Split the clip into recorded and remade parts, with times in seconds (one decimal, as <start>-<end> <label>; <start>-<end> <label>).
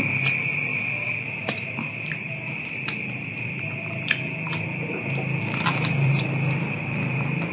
0.0-0.7 recorded; 0.7-3.6 remade; 3.6-5.4 recorded; 5.4-7.5 remade